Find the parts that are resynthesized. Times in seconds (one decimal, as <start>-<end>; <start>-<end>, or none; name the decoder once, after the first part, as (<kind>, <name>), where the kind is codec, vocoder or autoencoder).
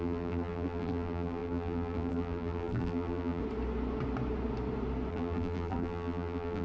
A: 0.0-3.4 (vocoder, BigVGAN v2); 5.1-6.6